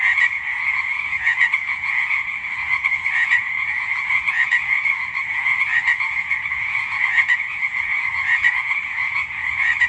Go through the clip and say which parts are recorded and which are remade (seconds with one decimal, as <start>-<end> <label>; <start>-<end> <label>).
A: 0.0-9.9 remade